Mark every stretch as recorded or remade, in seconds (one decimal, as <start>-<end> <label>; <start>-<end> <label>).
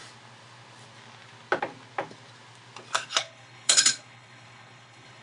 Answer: 0.0-3.1 recorded; 3.1-5.2 remade